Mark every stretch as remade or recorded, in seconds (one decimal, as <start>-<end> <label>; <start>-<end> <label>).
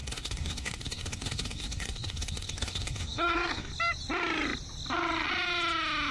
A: 0.0-3.7 remade; 3.7-6.1 recorded